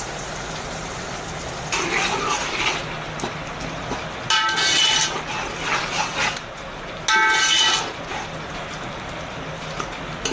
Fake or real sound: real